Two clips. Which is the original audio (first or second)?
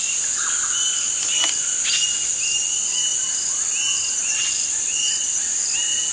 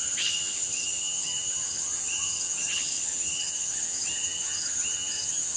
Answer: first